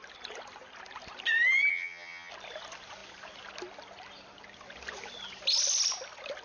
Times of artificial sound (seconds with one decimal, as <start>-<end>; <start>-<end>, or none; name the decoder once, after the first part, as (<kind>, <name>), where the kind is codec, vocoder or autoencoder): 1.7-2.3 (vocoder, HiFi-GAN)